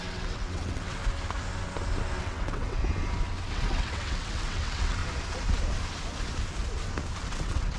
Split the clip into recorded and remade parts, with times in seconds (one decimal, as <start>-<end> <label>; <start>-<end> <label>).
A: 0.0-1.0 remade; 1.0-2.2 recorded; 2.2-2.8 remade; 2.8-3.5 recorded; 3.5-5.0 remade; 5.0-7.2 recorded; 7.2-7.8 remade